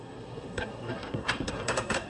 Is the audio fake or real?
fake